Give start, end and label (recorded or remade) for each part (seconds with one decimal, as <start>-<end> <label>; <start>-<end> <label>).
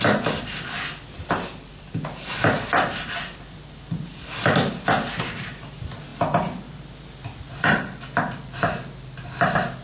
0.0-9.8 recorded